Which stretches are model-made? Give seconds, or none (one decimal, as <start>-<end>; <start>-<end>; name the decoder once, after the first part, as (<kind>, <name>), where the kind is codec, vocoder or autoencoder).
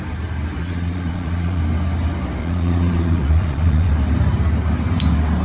0.6-1.6 (vocoder, Vocos); 2.4-4.0